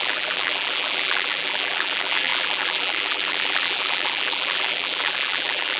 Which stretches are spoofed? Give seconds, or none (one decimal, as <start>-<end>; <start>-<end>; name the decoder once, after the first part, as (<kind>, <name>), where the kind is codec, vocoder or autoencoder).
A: 0.0-5.8 (vocoder, BigVGAN v2)